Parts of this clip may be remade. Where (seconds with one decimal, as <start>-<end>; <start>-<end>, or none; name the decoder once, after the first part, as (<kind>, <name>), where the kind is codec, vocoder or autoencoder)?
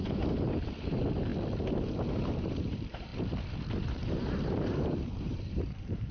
0.0-1.3 (vocoder, BigVGAN v2); 2.1-3.1; 3.8-6.1